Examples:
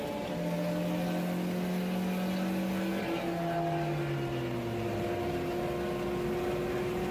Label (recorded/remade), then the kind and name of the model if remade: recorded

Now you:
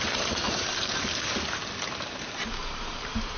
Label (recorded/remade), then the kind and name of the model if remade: remade, vocoder, BigVGAN v2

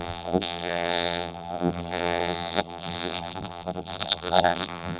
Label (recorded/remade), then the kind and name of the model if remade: remade, vocoder, BigVGAN v2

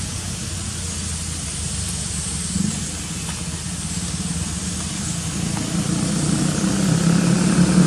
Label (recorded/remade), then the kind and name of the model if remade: recorded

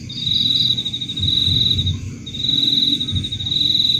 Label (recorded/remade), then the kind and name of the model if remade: recorded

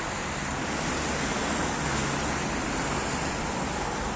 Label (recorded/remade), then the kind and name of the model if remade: recorded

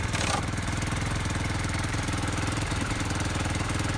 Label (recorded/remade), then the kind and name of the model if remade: remade, vocoder, BigVGAN v2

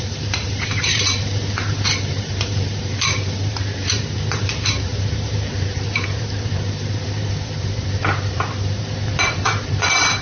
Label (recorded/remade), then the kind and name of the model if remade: remade, vocoder, BigVGAN v2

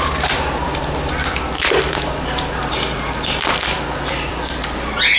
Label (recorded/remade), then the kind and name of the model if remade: remade, vocoder, BigVGAN v2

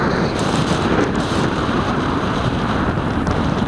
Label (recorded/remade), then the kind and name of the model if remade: remade, vocoder, BigVGAN v2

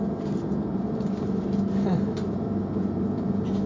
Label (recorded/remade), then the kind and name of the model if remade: remade, vocoder, BigVGAN v2